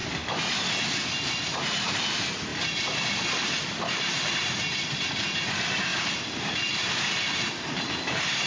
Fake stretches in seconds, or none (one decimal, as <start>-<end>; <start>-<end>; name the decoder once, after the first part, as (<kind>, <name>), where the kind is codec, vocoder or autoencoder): 1.5-8.5 (vocoder, BigVGAN v2)